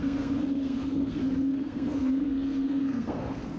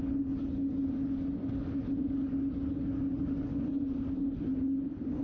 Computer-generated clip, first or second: first